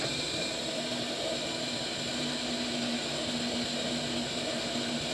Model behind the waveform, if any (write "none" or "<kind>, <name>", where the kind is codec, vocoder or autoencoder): none